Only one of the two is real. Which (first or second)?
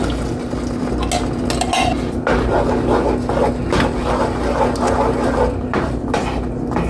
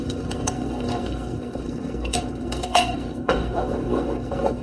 first